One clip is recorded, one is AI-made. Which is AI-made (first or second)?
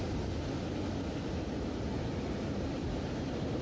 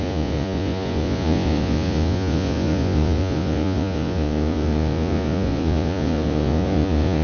second